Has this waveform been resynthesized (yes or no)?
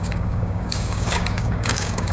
yes